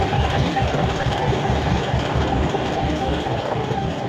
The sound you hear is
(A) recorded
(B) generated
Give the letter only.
B